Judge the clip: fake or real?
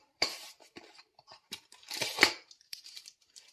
fake